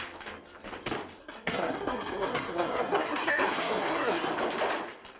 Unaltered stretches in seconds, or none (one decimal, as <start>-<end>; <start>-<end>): 0.0-1.2; 4.3-5.2